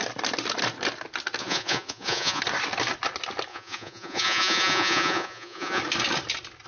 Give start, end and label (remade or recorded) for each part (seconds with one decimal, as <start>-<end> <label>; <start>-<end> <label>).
0.0-1.4 recorded; 1.4-2.4 remade; 2.4-3.5 recorded; 3.5-5.8 remade; 5.8-6.7 recorded